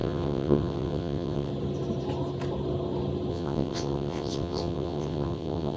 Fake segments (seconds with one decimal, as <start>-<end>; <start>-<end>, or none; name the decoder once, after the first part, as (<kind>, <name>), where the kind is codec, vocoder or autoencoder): 0.0-1.5 (vocoder, WaveNeXt); 3.3-5.8